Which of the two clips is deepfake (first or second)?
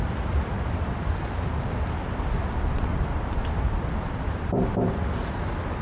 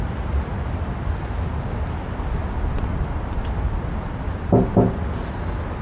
first